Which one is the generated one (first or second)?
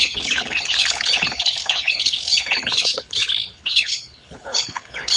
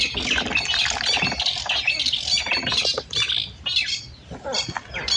first